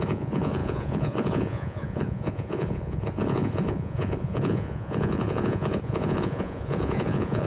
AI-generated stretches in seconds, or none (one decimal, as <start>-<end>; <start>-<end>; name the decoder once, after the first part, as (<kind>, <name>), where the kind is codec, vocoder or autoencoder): 0.0-7.5 (vocoder, Vocos)